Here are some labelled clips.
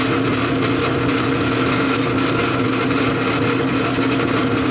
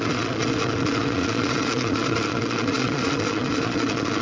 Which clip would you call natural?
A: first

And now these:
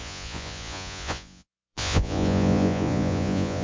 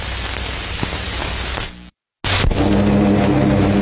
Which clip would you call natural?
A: second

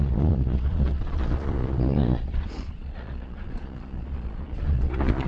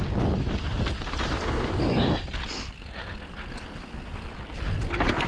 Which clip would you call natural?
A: second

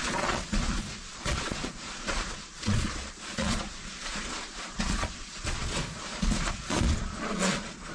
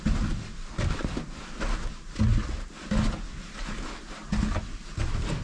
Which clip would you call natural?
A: second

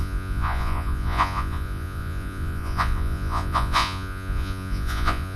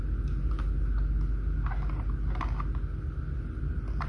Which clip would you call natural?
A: second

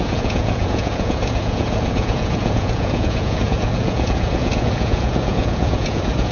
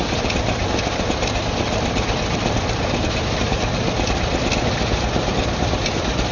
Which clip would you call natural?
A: second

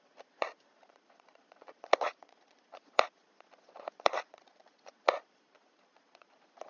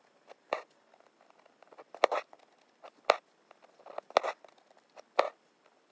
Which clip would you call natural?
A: second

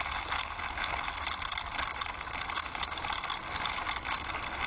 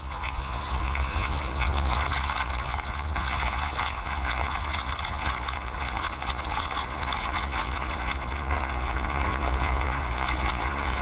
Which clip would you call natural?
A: first